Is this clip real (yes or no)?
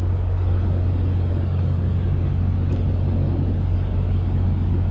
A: no